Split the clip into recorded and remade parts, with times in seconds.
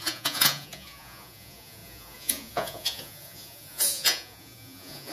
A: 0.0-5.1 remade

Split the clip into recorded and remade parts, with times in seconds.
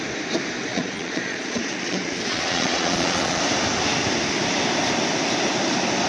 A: 0.0-0.7 recorded; 0.7-3.4 remade; 3.4-6.1 recorded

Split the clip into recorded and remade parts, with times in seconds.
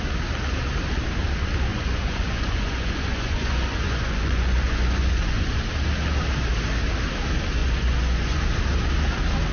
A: 0.0-1.7 recorded; 1.7-5.6 remade; 5.6-7.6 recorded; 7.6-8.4 remade; 8.4-9.5 recorded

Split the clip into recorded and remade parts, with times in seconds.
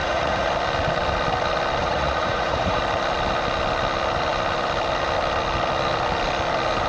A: 0.0-0.5 remade; 0.5-1.8 recorded; 1.8-2.8 remade; 2.8-6.9 recorded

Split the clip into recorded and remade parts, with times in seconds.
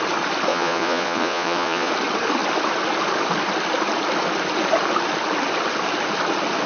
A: 0.0-0.5 recorded; 0.5-1.9 remade; 1.9-6.7 recorded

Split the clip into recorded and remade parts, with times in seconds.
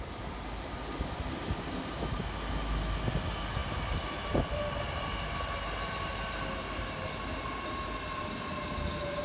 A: 0.0-9.2 recorded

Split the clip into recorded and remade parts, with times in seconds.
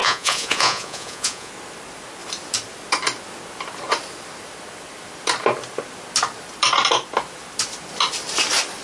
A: 0.0-1.5 remade; 1.5-8.8 recorded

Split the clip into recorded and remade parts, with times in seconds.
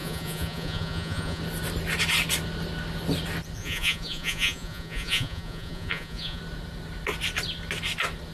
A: 0.0-1.4 remade; 1.4-3.6 recorded; 3.6-6.4 remade; 6.4-8.3 recorded